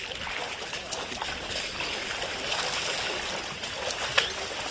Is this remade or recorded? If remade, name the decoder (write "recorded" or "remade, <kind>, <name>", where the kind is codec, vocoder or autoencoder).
recorded